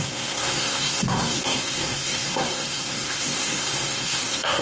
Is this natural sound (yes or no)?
no